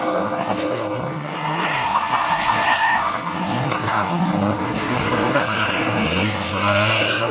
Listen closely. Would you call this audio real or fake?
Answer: fake